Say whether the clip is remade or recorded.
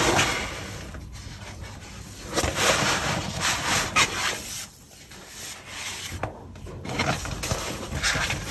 recorded